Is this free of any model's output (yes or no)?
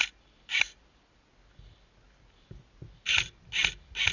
yes